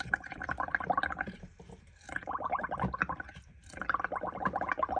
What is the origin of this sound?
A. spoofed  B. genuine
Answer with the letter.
B